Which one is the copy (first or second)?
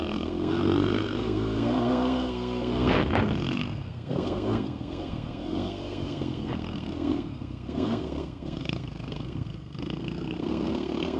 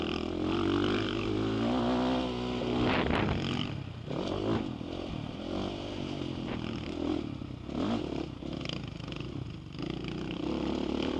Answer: first